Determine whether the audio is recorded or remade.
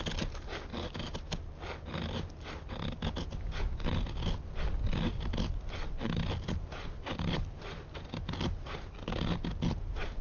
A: recorded